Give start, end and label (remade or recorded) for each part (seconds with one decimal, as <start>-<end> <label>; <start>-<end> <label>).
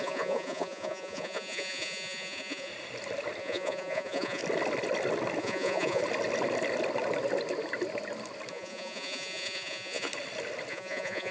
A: 0.0-2.7 remade; 2.7-3.4 recorded; 3.4-4.4 remade; 4.4-5.4 recorded; 5.4-6.0 remade; 6.0-8.5 recorded; 8.5-10.1 remade; 10.1-10.7 recorded; 10.7-11.3 remade